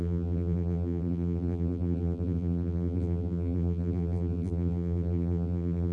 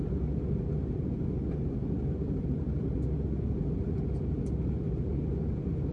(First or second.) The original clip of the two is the second